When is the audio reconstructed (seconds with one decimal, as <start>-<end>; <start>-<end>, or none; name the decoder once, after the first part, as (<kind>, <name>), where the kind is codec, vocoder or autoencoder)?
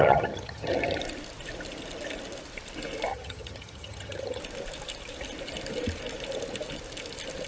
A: 0.0-1.0 (vocoder, HiFi-GAN); 3.1-4.4